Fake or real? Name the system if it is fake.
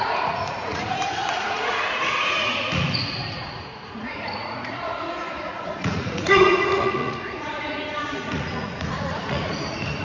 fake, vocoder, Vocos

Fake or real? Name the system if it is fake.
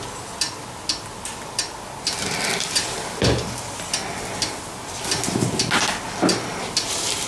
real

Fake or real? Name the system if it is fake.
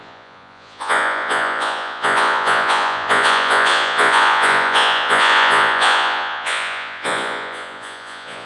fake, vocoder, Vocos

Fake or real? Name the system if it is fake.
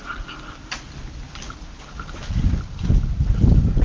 real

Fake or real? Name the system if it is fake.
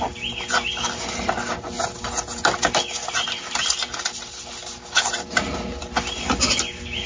real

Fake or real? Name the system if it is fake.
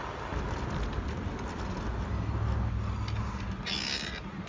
real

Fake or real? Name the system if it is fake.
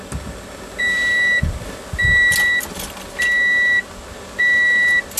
real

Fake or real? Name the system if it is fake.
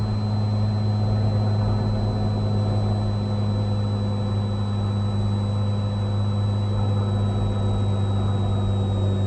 real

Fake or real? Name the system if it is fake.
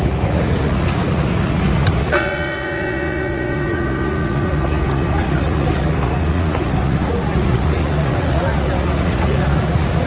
fake, vocoder, Vocos